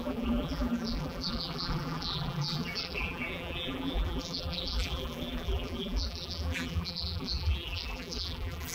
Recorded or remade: remade